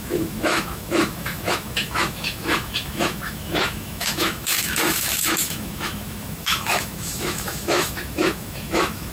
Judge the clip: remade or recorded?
remade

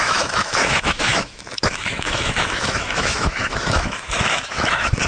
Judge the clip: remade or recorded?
remade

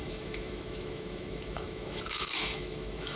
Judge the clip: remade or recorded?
remade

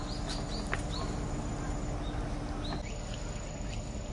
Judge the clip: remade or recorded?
recorded